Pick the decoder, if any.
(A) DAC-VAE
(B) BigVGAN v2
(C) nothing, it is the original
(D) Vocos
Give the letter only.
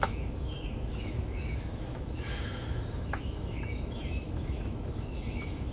A